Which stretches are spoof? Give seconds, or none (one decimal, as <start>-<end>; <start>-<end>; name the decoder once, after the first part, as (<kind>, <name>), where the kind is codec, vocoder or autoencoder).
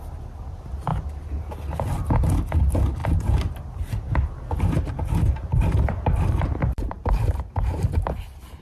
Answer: 5.5-8.6 (vocoder, BigVGAN v2)